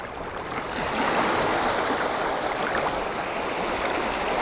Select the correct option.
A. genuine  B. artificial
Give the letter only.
A